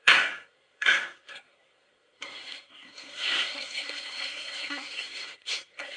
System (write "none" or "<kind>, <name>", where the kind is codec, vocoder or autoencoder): codec, SNAC